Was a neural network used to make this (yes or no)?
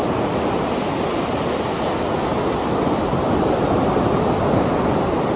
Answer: no